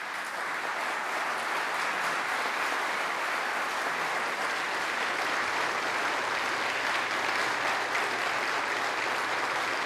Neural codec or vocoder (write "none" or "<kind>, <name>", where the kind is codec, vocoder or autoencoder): none